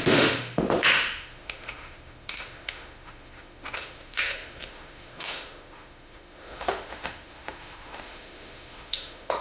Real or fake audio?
fake